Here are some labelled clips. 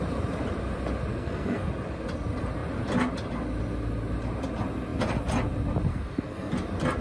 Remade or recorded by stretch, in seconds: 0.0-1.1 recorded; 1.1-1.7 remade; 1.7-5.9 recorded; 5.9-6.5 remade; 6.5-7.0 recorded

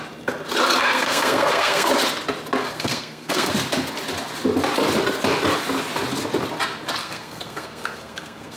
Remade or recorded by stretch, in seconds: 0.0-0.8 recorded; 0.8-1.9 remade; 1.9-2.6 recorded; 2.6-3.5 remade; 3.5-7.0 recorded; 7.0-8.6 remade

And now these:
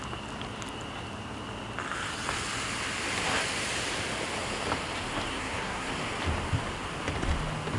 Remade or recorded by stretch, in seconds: 0.0-5.3 recorded; 5.3-5.9 remade; 5.9-7.8 recorded

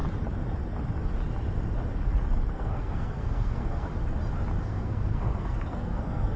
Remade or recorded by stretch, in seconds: 0.0-2.5 recorded; 2.5-3.9 remade; 3.9-4.6 recorded; 4.6-6.4 remade

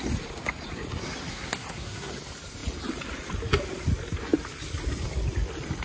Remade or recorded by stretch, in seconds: 0.0-1.3 recorded; 1.3-2.1 remade; 2.1-5.8 recorded

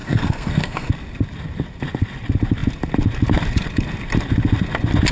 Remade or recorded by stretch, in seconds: 0.0-0.9 remade; 0.9-5.1 recorded